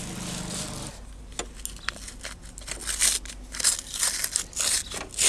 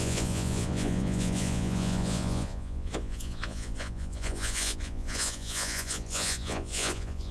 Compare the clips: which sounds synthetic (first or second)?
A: second